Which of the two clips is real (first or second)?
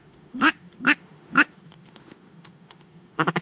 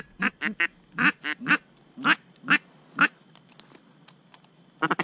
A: second